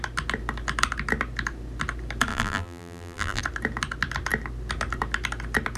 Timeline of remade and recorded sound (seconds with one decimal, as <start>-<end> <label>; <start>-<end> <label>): 0.0-2.3 recorded; 2.3-3.4 remade; 3.4-5.8 recorded